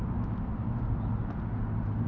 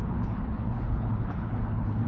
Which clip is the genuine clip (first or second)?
first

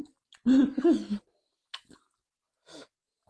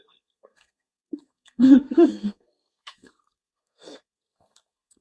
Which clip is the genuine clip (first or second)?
first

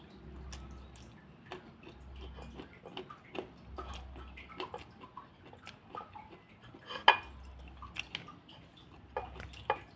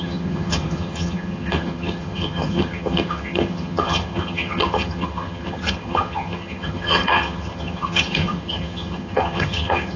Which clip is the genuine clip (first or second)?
first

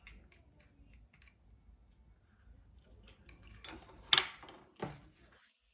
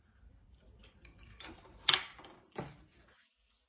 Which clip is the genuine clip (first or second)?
first